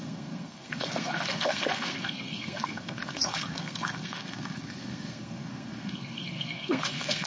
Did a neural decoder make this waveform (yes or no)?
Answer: yes